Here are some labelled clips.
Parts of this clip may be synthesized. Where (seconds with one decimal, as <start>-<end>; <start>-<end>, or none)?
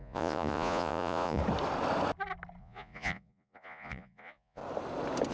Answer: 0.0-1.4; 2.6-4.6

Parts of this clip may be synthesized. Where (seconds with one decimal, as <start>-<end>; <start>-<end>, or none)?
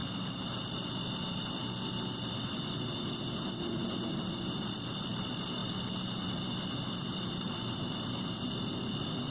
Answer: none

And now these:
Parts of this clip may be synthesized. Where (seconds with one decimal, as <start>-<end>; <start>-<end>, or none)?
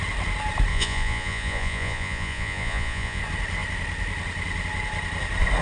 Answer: 0.7-3.2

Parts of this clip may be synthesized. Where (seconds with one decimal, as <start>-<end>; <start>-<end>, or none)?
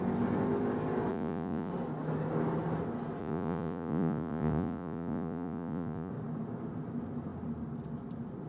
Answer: 1.1-1.7; 3.2-6.1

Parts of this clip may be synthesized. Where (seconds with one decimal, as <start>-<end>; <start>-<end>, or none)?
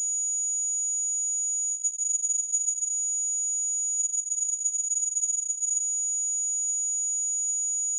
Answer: 1.7-2.9; 4.0-5.8